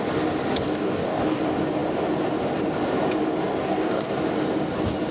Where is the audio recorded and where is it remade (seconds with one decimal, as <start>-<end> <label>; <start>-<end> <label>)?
0.0-0.8 recorded; 0.8-1.4 remade; 1.4-3.5 recorded; 3.5-4.1 remade; 4.1-5.1 recorded